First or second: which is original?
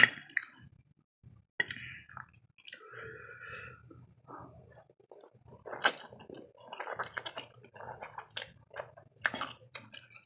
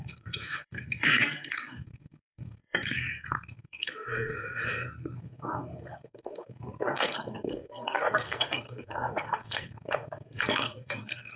first